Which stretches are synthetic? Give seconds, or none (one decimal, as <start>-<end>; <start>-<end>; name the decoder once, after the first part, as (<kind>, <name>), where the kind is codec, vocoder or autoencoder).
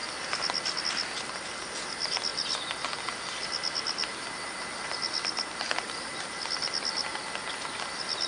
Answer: none